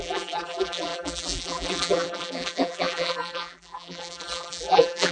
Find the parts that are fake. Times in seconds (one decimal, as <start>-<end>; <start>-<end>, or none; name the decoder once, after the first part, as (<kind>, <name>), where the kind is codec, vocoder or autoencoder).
0.0-5.1 (vocoder, BigVGAN v2)